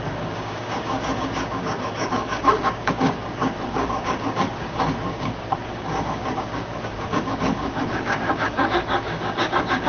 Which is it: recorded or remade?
remade